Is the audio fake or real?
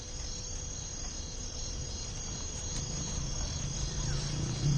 real